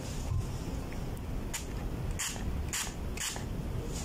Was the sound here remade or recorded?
recorded